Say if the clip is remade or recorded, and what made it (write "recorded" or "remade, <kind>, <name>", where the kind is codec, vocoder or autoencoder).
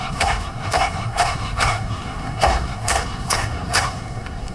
remade, codec, SNAC